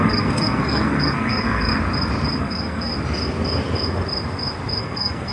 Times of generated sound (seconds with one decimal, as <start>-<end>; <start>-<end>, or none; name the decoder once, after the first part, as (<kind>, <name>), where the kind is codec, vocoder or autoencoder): 0.0-1.7 (codec, SNAC); 2.4-2.9; 4.8-5.3